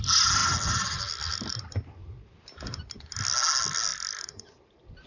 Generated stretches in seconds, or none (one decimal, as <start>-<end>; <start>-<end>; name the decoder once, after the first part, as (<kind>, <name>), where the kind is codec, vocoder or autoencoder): 0.4-1.5 (vocoder, BigVGAN v2); 3.9-5.1